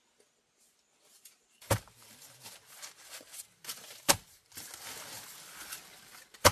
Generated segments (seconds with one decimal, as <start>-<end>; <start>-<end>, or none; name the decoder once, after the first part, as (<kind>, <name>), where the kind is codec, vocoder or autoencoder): 1.1-1.8 (vocoder, BigVGAN v2)

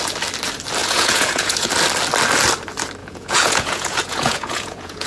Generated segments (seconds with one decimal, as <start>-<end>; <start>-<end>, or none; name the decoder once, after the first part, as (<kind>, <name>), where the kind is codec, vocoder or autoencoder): 0.8-1.7 (vocoder, Vocos); 3.0-5.1

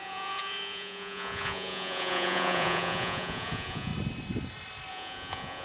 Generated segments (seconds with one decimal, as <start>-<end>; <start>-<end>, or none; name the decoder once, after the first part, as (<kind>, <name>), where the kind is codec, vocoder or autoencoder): 0.0-3.9 (vocoder, Vocos); 4.9-5.6

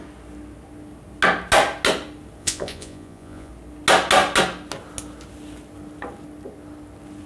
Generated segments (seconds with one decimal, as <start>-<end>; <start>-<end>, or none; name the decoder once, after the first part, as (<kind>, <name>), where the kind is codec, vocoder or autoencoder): 2.4-3.5 (vocoder, Vocos)

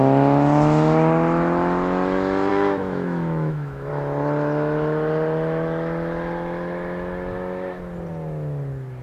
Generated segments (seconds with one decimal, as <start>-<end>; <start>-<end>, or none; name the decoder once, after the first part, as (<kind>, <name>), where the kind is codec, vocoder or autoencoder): 2.5-3.9 (autoencoder, DAC-VAE)